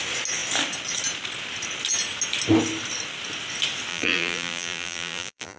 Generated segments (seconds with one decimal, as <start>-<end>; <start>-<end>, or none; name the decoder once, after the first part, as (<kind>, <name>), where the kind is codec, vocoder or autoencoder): 3.9-5.6 (vocoder, BigVGAN v2)